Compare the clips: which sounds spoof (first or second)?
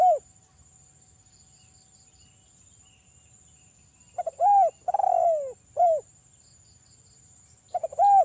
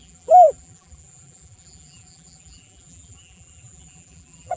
second